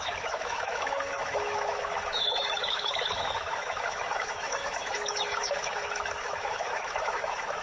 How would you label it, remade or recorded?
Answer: remade